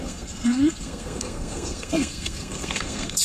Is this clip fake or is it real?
fake